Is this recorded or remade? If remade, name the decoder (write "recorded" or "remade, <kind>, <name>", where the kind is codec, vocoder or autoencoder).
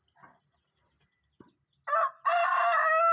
recorded